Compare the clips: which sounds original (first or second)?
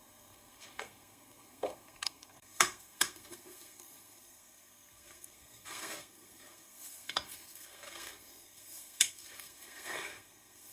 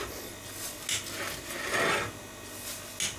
second